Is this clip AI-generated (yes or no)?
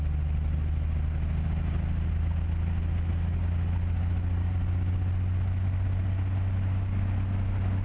no